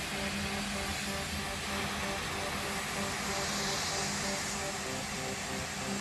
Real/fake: real